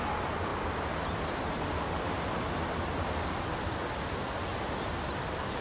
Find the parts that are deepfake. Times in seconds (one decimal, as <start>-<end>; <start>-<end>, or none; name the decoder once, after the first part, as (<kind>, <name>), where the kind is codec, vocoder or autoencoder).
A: 0.5-3.9 (vocoder, BigVGAN v2)